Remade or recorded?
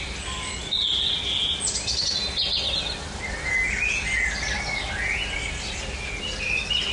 recorded